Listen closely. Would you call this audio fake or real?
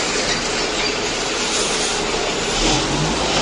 real